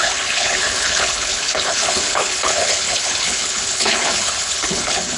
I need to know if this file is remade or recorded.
remade